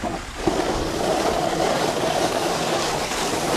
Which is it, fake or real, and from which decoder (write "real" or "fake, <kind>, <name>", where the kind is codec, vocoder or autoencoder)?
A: fake, codec, DAC